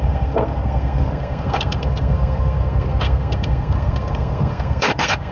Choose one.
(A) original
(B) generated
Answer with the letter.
B